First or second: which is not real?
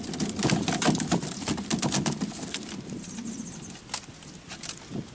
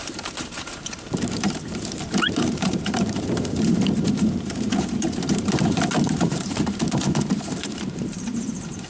second